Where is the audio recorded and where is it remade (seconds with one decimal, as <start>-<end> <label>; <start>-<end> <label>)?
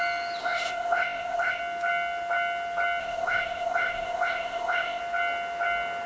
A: 0.0-0.4 recorded; 0.4-1.6 remade; 1.6-3.0 recorded; 3.0-5.0 remade; 5.0-6.1 recorded